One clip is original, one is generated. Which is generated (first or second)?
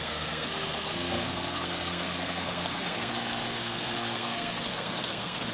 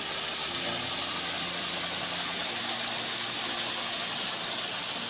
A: first